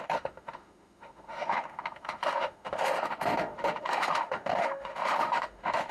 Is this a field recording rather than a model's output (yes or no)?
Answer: no